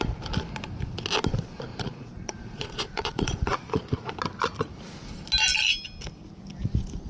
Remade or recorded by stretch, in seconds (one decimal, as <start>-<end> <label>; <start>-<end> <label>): 0.0-1.7 recorded; 1.7-4.1 remade; 4.1-7.1 recorded